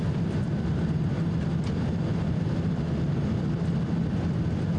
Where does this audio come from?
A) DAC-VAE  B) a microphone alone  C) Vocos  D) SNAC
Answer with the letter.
B